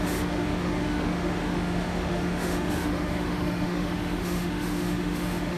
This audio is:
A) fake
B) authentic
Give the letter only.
A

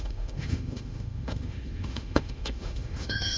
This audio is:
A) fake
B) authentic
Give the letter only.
A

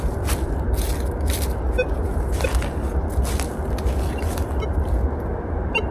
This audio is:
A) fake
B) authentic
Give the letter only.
B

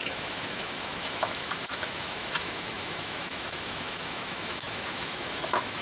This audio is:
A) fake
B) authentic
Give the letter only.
A